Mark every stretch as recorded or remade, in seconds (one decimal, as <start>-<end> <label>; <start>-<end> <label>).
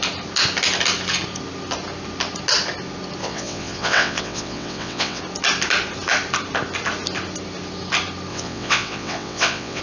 0.0-3.2 recorded; 3.2-5.2 remade; 5.2-8.3 recorded; 8.3-9.8 remade